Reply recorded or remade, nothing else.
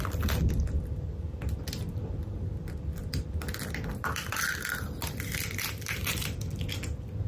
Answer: remade